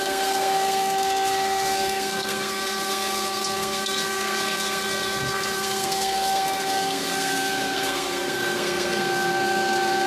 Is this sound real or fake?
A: fake